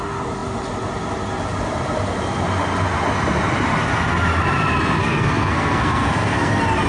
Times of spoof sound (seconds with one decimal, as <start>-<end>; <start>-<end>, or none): 5.0-6.5